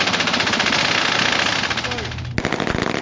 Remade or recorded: recorded